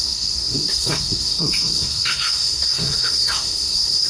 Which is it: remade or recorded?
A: remade